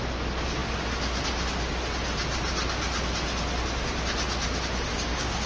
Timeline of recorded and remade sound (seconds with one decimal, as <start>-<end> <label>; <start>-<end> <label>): 0.0-4.9 recorded; 4.9-5.5 remade